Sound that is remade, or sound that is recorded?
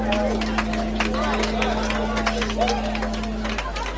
recorded